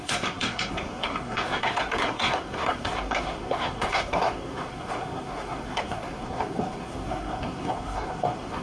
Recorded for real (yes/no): no